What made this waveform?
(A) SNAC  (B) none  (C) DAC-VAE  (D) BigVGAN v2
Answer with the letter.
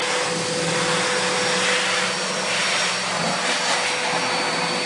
B